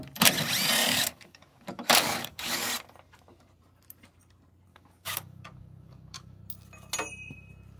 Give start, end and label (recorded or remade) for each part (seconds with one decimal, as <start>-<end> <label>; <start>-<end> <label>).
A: 0.0-0.8 recorded; 0.8-2.7 remade; 2.7-4.7 recorded; 4.7-6.4 remade; 6.4-7.8 recorded

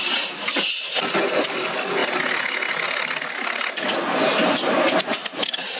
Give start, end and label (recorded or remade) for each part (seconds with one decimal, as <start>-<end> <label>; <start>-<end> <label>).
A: 0.0-5.8 recorded

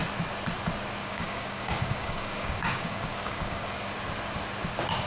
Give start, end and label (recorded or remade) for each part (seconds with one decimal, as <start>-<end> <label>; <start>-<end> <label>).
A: 0.0-1.0 recorded; 1.0-3.9 remade; 3.9-5.1 recorded

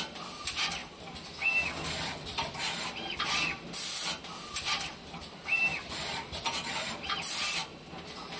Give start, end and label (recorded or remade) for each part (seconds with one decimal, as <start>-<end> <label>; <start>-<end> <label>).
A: 0.0-8.4 recorded

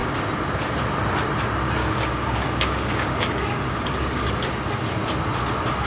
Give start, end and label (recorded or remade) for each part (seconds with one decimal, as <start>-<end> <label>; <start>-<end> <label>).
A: 0.0-1.8 recorded; 1.8-4.3 remade; 4.3-5.9 recorded

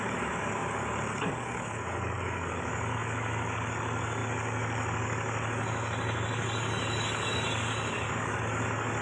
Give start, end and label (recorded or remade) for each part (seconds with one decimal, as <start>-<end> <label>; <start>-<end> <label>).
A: 0.0-9.0 remade

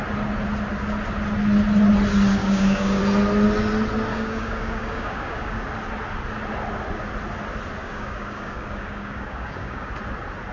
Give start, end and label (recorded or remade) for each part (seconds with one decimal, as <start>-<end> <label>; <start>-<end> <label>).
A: 0.0-2.4 recorded; 2.4-3.0 remade; 3.0-4.1 recorded; 4.1-5.7 remade; 5.7-7.8 recorded; 7.8-9.9 remade; 9.9-10.5 recorded